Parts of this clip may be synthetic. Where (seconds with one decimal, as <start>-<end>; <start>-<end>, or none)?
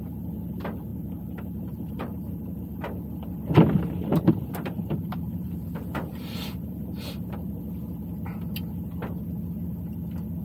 0.9-2.6; 4.1-7.6